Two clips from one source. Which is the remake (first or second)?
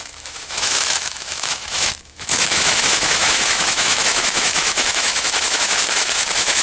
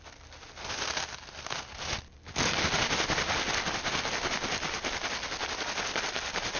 first